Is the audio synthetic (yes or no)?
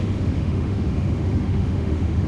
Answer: yes